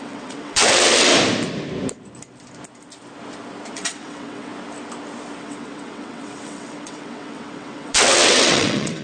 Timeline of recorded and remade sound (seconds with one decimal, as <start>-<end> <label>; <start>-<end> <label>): 0.0-1.1 remade; 1.1-3.7 recorded; 3.7-4.5 remade; 4.5-5.4 recorded; 5.4-9.0 remade